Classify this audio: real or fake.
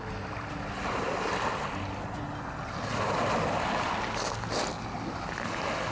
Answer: real